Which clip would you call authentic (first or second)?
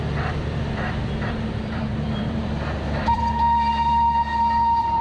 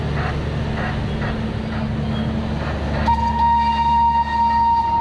second